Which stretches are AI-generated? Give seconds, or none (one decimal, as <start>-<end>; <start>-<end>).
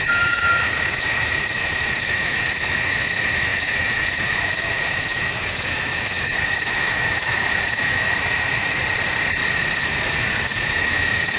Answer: 0.0-8.8; 9.5-11.4